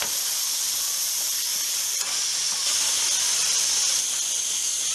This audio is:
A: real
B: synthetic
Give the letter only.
B